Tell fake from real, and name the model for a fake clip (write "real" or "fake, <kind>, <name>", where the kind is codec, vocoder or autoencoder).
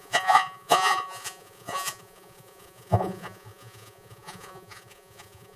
fake, vocoder, Vocos